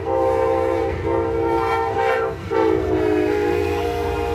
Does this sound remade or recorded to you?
remade